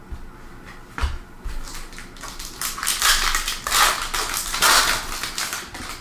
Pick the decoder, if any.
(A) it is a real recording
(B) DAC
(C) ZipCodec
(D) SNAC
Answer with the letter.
A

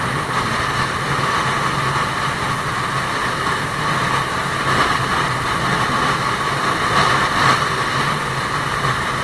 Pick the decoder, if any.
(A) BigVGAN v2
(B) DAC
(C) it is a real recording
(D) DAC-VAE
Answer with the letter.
C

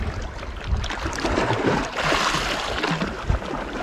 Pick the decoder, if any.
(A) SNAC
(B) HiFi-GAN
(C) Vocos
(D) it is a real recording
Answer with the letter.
D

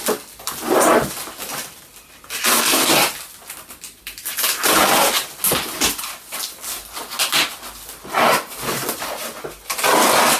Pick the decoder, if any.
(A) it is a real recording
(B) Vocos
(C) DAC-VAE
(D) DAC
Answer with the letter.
A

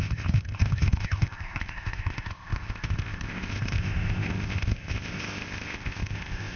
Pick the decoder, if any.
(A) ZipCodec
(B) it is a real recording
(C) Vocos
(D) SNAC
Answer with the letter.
A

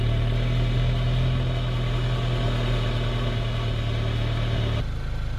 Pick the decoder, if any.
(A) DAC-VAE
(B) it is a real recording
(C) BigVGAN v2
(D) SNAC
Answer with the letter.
B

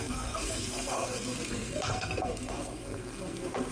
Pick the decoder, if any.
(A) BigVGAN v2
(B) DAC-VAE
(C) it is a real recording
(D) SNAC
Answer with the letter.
D